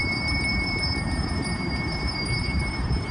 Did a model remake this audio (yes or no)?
yes